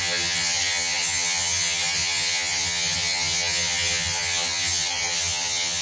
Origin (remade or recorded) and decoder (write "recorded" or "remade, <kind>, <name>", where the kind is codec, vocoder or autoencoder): remade, vocoder, HiFi-GAN